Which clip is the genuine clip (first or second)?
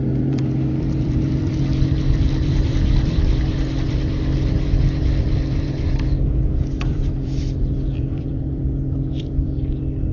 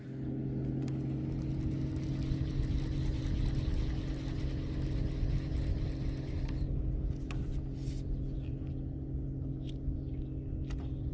second